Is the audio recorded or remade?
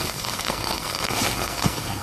remade